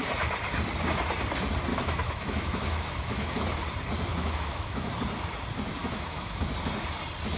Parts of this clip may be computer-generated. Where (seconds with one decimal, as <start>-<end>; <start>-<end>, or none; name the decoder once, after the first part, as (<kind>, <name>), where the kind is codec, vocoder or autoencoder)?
1.7-3.4 (autoencoder, DAC-VAE); 4.1-4.9; 5.8-6.5